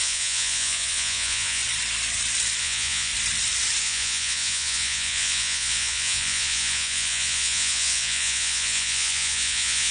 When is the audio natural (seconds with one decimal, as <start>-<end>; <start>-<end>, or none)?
1.6-2.6; 3.1-3.8